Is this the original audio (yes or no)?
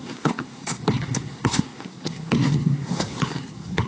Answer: no